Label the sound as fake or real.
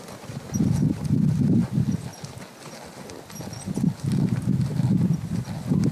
real